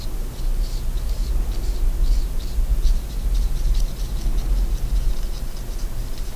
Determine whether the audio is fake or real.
real